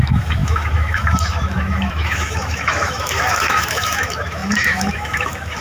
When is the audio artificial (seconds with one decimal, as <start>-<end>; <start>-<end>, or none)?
0.0-5.6

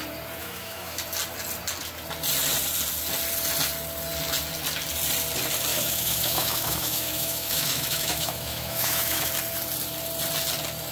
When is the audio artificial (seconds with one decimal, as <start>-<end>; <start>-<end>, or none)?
0.4-1.0; 5.7-9.3

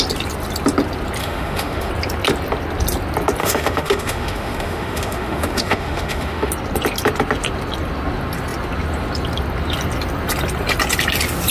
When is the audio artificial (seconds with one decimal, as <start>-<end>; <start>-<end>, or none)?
1.2-1.9; 3.4-6.5